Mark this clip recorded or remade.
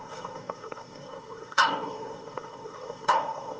remade